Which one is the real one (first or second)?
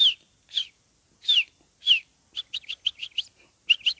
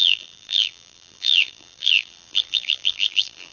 first